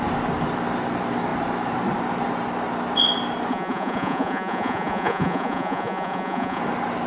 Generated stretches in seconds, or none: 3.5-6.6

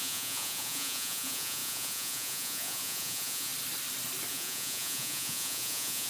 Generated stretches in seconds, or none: 0.0-3.5; 4.3-6.1

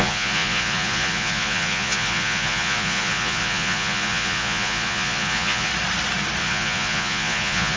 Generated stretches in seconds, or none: 0.0-5.7; 6.4-7.8

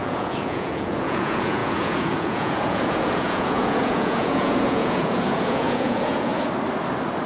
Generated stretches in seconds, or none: 0.0-6.3

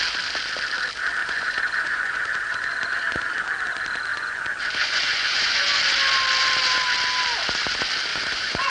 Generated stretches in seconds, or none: 1.2-3.3; 4.1-5.8; 8.1-8.7

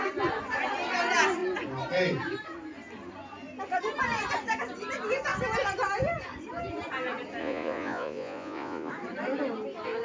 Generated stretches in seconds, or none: 7.4-8.9